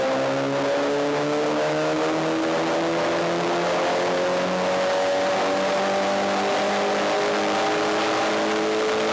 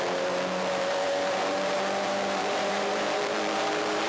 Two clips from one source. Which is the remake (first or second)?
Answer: second